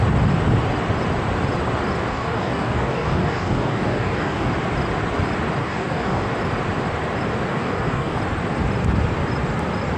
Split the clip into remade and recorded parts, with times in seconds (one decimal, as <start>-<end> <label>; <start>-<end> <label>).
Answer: 0.0-2.1 recorded; 2.1-4.5 remade; 4.5-5.6 recorded; 5.6-6.3 remade; 6.3-7.5 recorded; 7.5-8.2 remade; 8.2-10.0 recorded